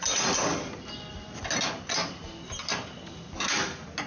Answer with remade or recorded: recorded